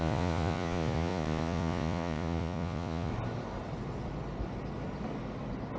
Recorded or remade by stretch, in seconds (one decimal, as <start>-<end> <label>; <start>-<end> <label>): 0.0-3.1 remade; 3.1-5.8 recorded